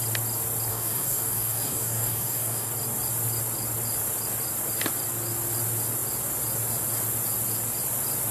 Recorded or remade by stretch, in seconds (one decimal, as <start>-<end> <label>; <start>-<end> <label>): 0.0-0.7 recorded; 0.7-2.7 remade; 2.7-8.3 recorded